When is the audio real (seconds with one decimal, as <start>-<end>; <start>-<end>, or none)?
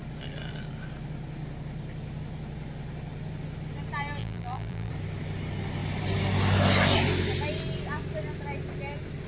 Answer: 0.0-4.2; 4.9-9.3